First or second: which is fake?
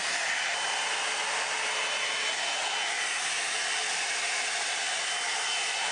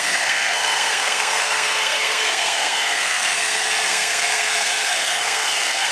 second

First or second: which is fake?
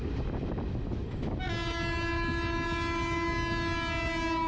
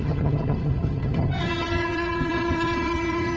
second